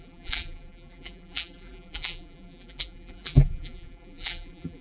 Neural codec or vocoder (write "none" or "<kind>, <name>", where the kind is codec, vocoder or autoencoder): vocoder, BigVGAN v2